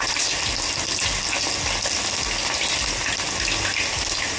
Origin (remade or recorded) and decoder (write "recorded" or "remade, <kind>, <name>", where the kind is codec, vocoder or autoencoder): recorded